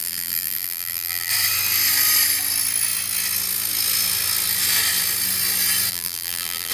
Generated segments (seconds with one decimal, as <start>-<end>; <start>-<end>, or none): 0.0-1.3; 5.9-6.7